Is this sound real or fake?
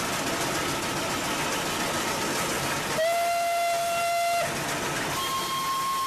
real